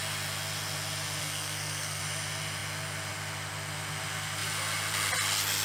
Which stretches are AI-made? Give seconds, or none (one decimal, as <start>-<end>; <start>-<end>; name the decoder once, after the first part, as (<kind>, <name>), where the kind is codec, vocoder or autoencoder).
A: 1.2-2.0 (codec, SNAC)